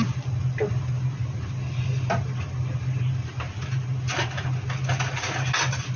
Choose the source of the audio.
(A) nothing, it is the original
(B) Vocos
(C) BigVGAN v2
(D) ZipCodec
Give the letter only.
A